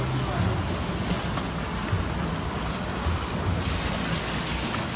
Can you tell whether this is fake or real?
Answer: real